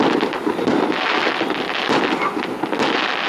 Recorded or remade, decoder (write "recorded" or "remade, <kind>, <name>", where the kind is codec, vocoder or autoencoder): recorded